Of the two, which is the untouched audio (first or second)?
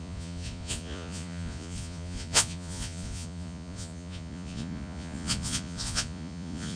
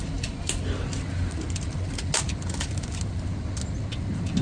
second